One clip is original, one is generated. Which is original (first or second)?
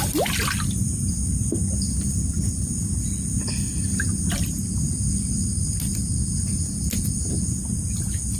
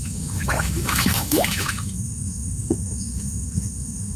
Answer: first